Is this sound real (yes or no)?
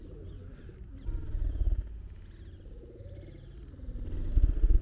yes